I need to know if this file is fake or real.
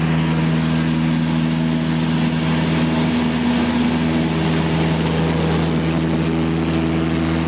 real